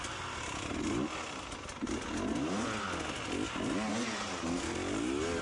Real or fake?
real